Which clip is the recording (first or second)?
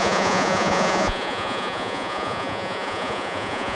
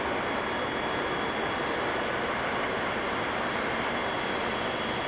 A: second